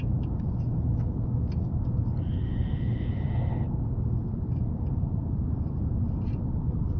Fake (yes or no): no